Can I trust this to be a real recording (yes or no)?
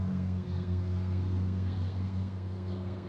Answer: no